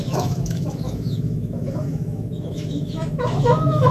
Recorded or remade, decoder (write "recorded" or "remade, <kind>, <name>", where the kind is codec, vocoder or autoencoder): remade, autoencoder, DAC-VAE